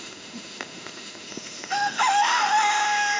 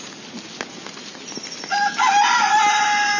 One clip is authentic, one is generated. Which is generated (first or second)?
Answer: first